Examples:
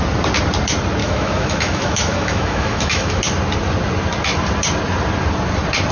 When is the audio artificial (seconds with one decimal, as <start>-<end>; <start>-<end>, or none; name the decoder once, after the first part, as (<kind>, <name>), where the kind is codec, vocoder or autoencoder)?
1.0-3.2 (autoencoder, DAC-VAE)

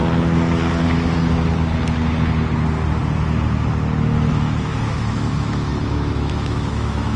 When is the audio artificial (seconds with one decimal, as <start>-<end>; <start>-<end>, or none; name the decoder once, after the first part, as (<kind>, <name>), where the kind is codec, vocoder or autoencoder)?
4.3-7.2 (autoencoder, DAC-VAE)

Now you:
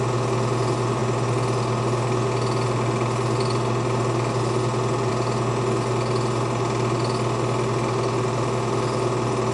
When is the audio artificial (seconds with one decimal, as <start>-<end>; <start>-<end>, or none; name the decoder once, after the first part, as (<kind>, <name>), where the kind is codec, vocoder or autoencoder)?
none

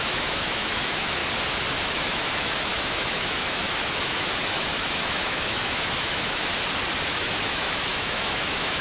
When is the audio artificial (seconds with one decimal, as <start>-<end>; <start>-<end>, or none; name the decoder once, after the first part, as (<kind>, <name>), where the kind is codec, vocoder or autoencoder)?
0.0-1.2 (autoencoder, DAC-VAE); 1.9-6.5; 7.0-8.8

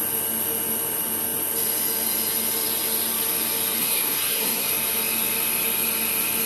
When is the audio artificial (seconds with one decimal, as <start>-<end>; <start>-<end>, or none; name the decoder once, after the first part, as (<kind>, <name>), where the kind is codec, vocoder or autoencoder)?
3.8-4.7 (codec, SNAC)